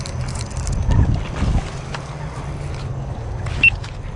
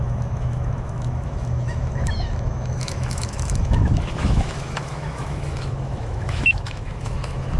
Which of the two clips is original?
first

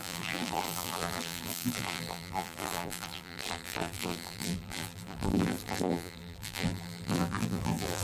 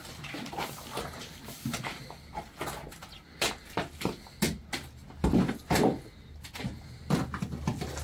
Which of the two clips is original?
second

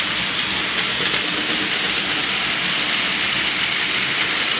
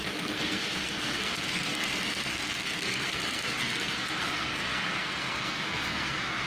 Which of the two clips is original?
first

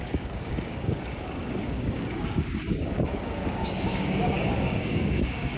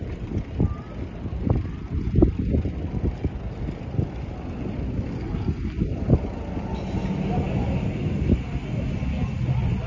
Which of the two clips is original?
second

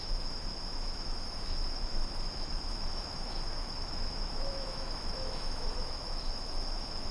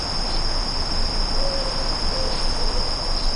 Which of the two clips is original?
second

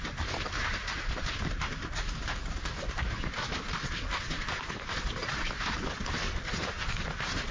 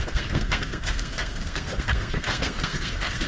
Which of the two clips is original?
first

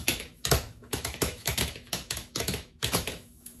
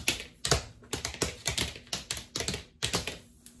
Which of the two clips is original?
second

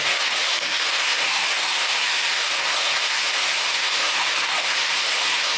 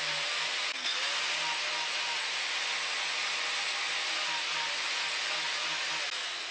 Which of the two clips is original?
second